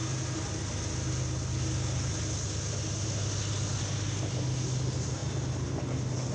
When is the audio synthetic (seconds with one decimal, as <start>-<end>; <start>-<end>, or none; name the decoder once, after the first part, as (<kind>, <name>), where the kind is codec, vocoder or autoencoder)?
none